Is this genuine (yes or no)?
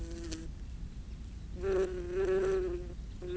yes